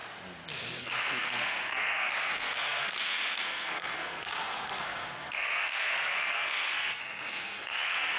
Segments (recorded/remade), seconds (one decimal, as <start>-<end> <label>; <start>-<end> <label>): 0.0-0.8 recorded; 0.8-8.2 remade